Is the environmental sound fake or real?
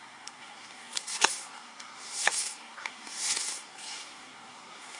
fake